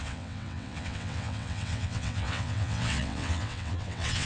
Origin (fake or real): fake